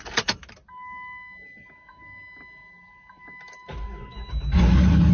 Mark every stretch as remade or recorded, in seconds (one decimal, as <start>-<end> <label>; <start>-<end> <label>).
0.0-5.1 recorded